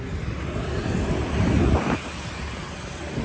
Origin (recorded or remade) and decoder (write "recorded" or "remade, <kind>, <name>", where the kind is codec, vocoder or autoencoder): recorded